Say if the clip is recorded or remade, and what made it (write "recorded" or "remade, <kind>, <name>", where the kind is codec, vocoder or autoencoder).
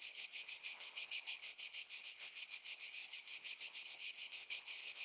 remade, codec, HILCodec